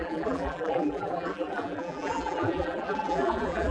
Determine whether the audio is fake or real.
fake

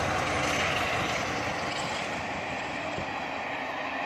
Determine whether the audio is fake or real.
real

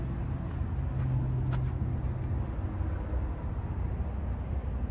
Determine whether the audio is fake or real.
real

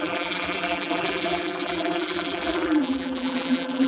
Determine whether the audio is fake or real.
fake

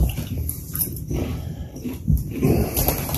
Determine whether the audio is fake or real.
fake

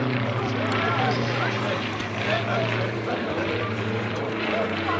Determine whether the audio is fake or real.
fake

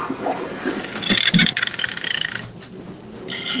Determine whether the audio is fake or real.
real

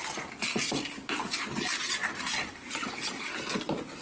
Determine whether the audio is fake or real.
real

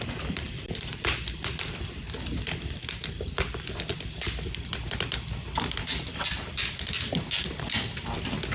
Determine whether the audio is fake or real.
fake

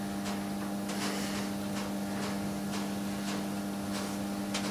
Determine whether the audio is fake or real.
real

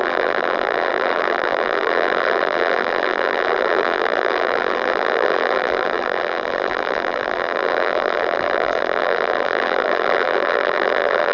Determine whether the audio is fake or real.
fake